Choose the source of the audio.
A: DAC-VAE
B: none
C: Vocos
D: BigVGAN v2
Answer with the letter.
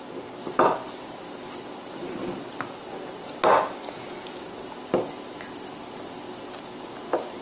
B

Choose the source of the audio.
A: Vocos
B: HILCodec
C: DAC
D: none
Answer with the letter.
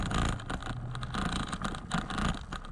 D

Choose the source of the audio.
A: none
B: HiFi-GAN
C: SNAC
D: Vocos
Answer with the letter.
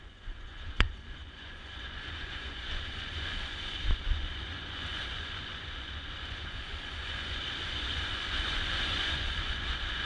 D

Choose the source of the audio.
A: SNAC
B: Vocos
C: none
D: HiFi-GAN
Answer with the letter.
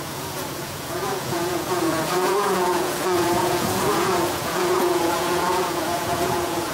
B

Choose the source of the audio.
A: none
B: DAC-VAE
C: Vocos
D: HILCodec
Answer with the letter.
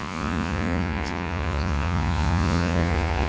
C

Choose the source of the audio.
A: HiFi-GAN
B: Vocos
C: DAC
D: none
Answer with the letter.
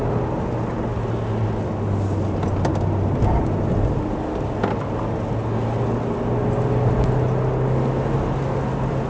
D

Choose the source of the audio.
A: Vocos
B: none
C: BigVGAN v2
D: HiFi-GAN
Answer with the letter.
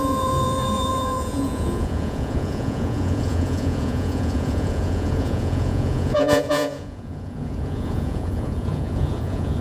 A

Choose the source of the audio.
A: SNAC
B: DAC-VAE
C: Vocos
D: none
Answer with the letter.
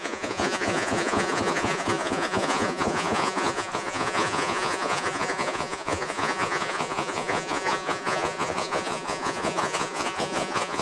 C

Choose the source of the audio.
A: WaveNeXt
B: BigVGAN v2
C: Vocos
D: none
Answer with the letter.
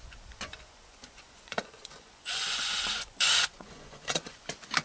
C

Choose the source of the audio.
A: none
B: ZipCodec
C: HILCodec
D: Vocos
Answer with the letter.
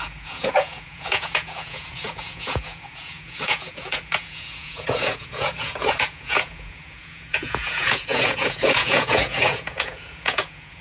D